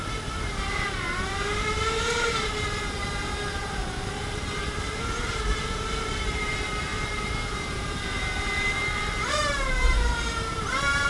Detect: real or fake fake